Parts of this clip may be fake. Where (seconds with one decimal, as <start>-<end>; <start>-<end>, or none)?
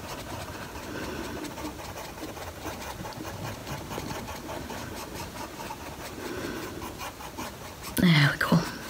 none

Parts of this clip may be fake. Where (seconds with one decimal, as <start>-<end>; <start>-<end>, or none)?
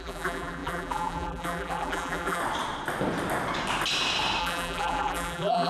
0.0-2.4; 4.4-5.7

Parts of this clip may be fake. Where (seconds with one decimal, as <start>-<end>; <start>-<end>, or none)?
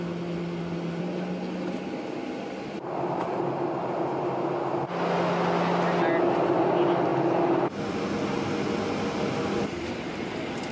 none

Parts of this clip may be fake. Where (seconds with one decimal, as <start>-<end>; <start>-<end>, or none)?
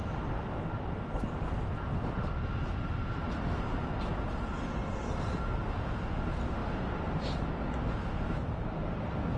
6.6-7.7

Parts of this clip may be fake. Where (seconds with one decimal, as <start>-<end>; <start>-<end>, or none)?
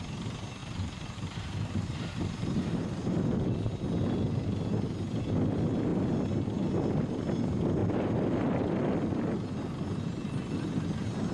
0.6-3.5; 7.8-8.3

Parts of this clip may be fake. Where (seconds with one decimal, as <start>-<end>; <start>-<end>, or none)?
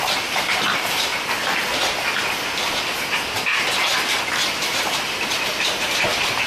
0.0-1.1; 4.5-6.5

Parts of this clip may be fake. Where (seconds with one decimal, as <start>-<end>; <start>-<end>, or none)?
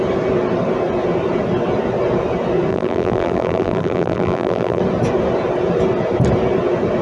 2.7-4.8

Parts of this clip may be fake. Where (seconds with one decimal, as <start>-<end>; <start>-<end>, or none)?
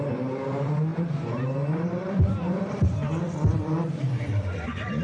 0.0-5.0